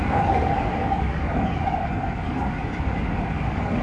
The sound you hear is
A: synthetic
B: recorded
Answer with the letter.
A